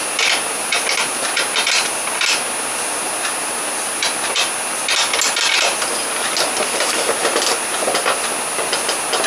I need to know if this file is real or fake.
real